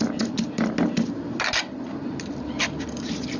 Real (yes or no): yes